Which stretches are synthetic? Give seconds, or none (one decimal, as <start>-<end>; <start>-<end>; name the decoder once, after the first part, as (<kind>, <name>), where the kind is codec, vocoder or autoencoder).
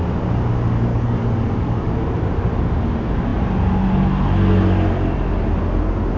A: 0.9-1.9 (codec, DAC)